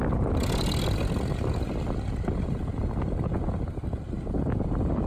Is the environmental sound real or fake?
real